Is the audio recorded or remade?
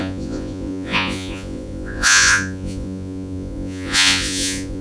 remade